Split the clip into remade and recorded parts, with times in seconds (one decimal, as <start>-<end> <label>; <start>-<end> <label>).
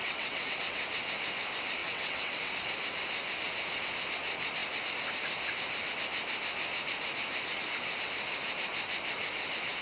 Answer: 0.0-0.8 remade; 0.8-1.8 recorded; 1.8-2.5 remade; 2.5-9.8 recorded